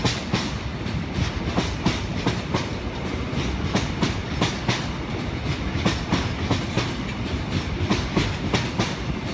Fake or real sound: real